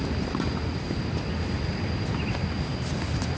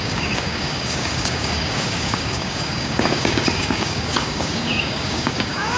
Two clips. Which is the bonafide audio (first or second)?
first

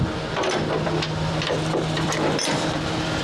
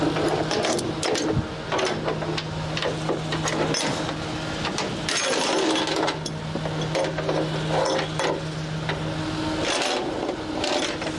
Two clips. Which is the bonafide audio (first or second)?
second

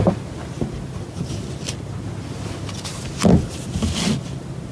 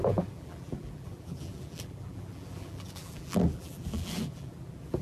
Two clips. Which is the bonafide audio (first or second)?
first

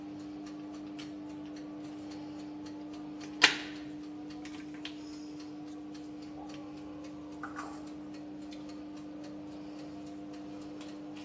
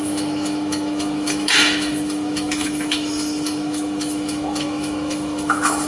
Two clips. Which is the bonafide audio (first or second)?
first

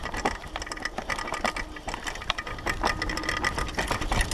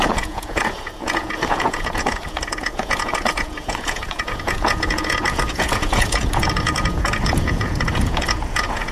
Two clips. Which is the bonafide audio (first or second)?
first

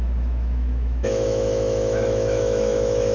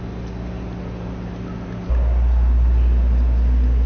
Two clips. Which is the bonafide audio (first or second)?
second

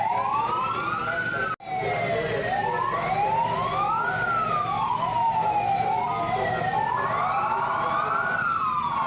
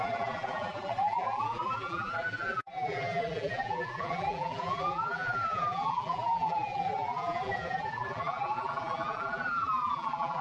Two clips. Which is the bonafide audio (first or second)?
first